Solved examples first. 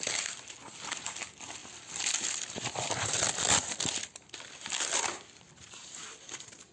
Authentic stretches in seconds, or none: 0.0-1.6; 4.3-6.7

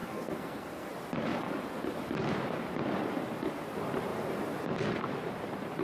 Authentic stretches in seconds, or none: 0.9-5.8

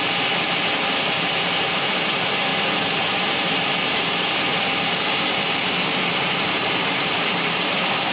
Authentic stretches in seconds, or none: 2.5-3.1

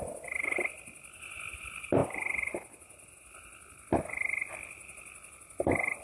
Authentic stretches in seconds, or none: 0.0-6.0

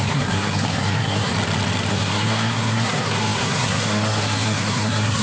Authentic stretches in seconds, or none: 1.3-1.9

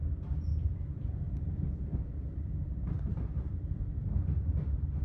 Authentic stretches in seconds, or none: 0.0-0.5; 3.5-5.0

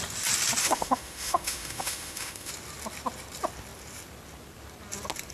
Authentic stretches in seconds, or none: 0.0-0.6; 2.5-5.3